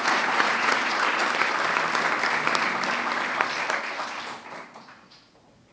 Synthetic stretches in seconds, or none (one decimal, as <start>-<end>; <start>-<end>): 0.0-1.2; 4.6-5.7